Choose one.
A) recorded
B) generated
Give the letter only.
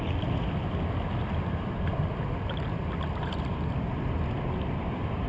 A